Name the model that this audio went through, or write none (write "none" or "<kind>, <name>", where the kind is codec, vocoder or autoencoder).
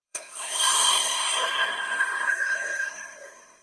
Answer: codec, SNAC